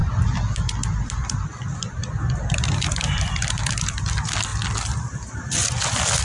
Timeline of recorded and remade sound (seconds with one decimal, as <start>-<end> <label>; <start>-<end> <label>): 0.0-0.9 recorded; 0.9-4.5 remade; 4.5-6.2 recorded